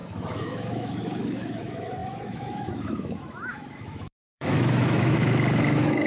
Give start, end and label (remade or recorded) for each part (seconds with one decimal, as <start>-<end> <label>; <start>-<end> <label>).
0.0-6.1 remade